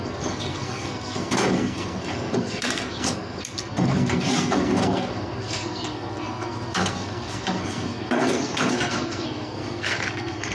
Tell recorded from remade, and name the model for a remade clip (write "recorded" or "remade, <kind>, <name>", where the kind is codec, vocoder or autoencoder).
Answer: remade, codec, SNAC